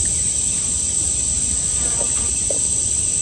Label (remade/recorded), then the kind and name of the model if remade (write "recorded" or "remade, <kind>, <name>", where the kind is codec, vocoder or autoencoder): recorded